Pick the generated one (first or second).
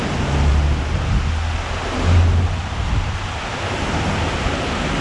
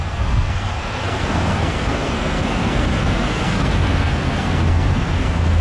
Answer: second